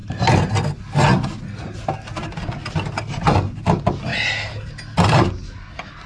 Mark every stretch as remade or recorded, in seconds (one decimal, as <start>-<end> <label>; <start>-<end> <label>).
0.0-6.1 recorded